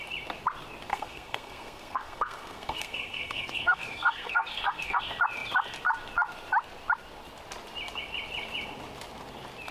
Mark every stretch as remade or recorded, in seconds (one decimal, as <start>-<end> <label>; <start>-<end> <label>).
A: 0.0-0.9 recorded; 0.9-5.0 remade; 5.0-9.7 recorded